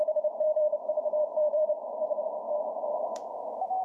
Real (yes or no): no